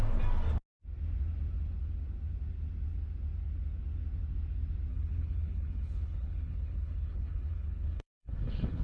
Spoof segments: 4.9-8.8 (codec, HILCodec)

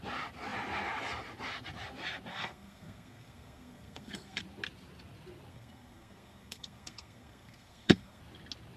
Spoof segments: 2.3-4.4 (codec, SNAC); 5.5-8.2

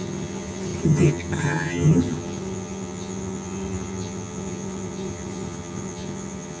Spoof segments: 0.0-6.6 (vocoder, HiFi-GAN)